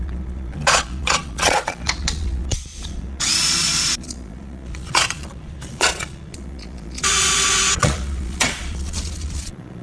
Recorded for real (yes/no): no